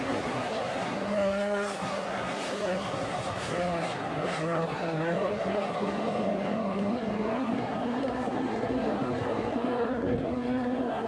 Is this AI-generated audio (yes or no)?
yes